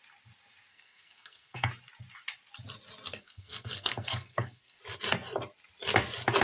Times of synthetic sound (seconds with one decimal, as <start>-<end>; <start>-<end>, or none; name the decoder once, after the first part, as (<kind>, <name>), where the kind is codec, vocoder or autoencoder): 0.7-1.7 (codec, SNAC); 3.1-4.8

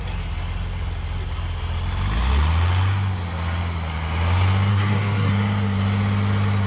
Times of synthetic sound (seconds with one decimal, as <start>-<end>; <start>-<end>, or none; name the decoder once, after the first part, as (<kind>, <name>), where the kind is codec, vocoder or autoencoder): 4.7-5.3 (codec, SNAC)

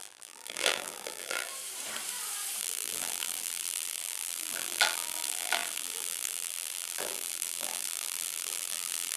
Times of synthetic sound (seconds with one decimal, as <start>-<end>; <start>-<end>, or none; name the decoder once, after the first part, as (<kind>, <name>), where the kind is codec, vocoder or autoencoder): 0.0-1.5 (vocoder, BigVGAN v2); 2.6-9.2

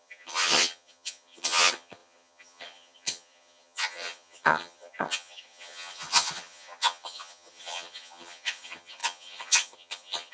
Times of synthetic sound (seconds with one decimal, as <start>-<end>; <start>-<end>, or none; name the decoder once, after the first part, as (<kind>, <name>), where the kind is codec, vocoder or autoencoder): 0.0-10.3 (vocoder, HiFi-GAN)

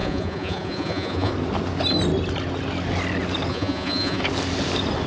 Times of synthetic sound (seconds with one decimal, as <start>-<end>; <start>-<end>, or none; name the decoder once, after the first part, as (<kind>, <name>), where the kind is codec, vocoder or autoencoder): 0.0-1.3 (vocoder, Vocos); 3.5-4.2

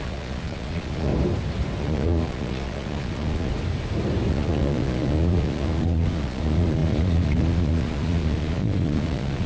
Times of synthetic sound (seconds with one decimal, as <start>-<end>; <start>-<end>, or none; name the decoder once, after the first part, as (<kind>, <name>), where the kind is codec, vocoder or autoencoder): 0.0-1.1 (vocoder, Vocos); 1.8-3.5; 4.3-9.5

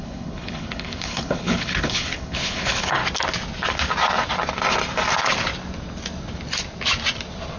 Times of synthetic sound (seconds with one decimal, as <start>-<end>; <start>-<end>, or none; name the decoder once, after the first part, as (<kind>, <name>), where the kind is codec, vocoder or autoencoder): 0.0-3.0 (codec, HILCodec)